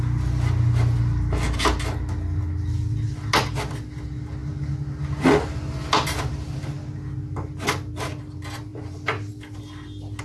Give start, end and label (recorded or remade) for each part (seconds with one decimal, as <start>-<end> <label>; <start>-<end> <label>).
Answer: 0.0-10.2 recorded